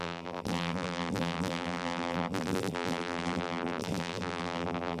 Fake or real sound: fake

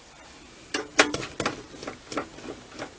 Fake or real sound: real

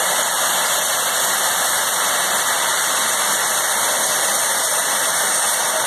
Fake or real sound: real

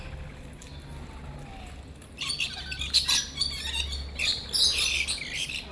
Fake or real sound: real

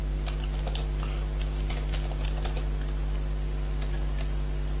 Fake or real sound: real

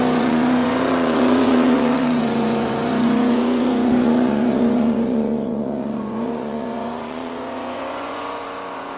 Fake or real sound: fake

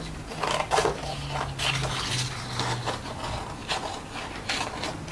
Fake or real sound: real